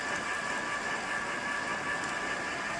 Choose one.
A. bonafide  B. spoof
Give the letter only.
A